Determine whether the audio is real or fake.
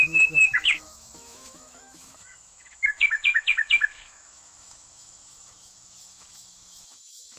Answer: fake